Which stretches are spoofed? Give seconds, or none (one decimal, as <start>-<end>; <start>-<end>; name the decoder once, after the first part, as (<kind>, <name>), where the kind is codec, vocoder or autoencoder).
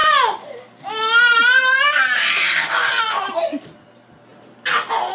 none